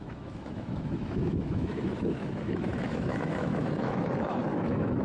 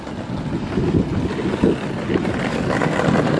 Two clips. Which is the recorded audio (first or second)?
second